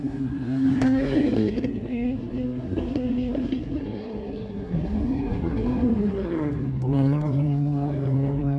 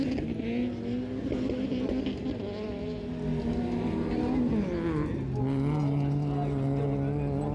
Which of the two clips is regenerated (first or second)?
first